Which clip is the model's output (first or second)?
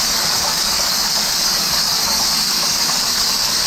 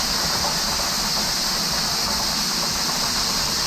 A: first